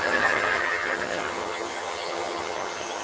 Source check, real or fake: fake